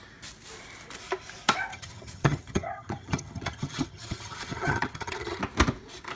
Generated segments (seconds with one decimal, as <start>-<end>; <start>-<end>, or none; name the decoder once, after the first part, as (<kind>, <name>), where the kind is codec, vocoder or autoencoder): 1.7-5.4 (vocoder, HiFi-GAN)